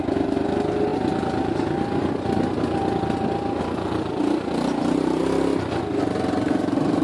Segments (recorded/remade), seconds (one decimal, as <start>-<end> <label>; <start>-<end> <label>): 0.0-7.0 recorded